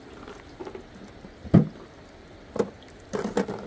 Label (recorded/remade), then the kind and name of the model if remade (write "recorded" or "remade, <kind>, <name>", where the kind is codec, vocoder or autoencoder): recorded